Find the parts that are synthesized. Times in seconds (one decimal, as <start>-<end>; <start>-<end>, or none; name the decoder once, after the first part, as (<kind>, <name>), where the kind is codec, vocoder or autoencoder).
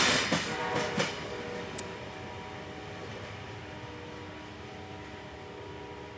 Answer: 3.0-3.5 (vocoder, BigVGAN v2)